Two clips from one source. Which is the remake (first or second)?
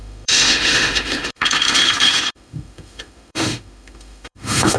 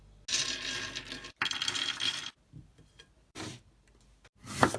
first